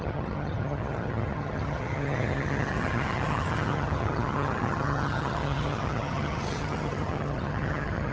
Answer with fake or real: fake